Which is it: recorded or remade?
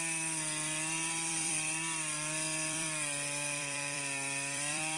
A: remade